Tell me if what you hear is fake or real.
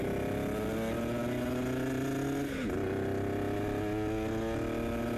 real